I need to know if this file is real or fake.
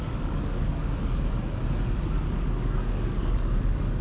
fake